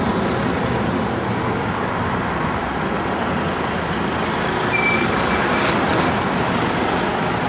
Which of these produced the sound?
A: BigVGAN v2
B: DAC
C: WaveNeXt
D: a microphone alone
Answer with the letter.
D